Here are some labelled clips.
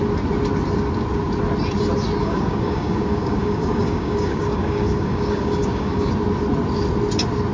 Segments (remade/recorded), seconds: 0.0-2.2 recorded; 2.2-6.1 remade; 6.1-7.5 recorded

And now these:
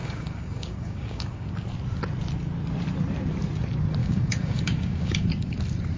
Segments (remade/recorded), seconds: 0.0-1.5 remade; 1.5-4.0 recorded; 4.0-5.6 remade; 5.6-6.0 recorded

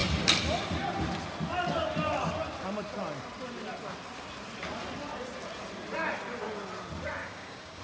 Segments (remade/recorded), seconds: 0.0-7.2 recorded; 7.2-7.8 remade

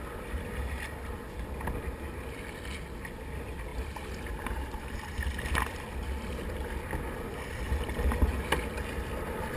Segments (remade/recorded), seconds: 0.0-9.6 recorded

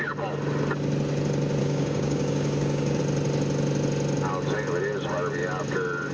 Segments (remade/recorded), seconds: 0.0-1.6 recorded; 1.6-3.0 remade; 3.0-6.1 recorded

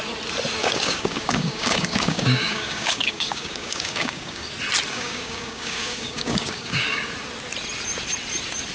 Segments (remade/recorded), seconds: 0.0-0.6 recorded; 0.6-4.5 remade; 4.5-4.9 recorded; 4.9-7.0 remade; 7.0-8.7 recorded

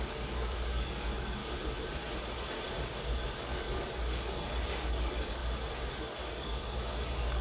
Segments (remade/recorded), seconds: 0.0-1.4 remade; 1.4-3.4 recorded; 3.4-5.4 remade; 5.4-6.3 recorded; 6.3-7.4 remade

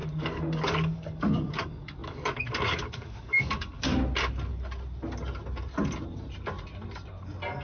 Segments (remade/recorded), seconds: 0.0-3.9 remade; 3.9-7.6 recorded